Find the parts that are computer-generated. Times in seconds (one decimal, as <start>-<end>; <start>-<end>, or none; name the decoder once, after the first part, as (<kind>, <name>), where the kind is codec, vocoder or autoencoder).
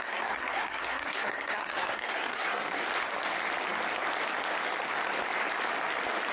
0.0-2.8 (codec, SNAC)